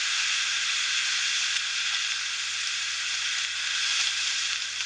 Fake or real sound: real